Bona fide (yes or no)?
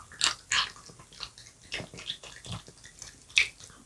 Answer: yes